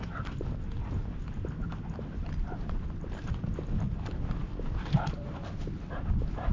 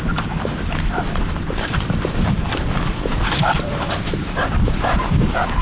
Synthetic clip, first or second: second